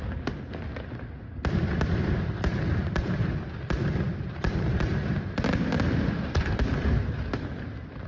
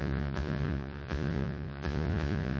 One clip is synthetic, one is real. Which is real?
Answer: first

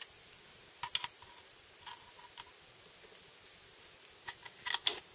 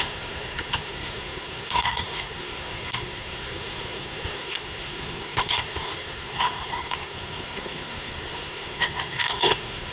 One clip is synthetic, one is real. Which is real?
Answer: first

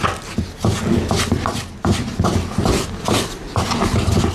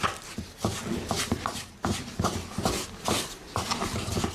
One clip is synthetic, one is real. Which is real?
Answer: first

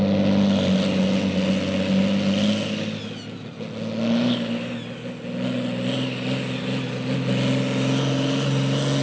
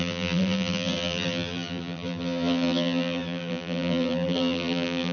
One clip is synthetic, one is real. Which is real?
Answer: first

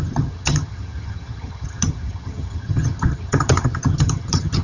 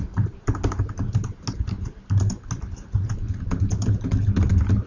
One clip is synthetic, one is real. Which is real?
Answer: second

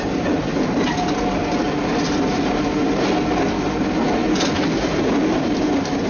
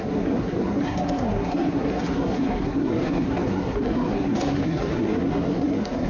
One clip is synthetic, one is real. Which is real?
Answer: first